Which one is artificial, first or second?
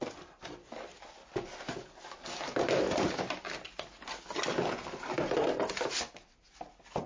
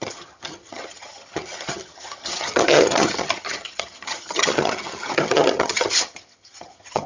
second